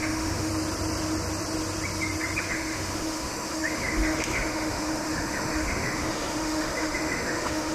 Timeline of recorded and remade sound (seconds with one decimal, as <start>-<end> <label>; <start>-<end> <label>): 0.0-0.5 remade; 0.5-2.5 recorded; 2.5-7.7 remade

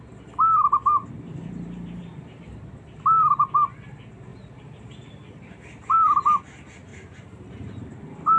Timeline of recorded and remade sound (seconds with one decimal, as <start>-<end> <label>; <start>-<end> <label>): 0.0-1.0 recorded; 1.0-2.1 remade; 2.1-4.3 recorded; 4.3-6.4 remade; 6.4-6.9 recorded; 6.9-7.9 remade; 7.9-8.4 recorded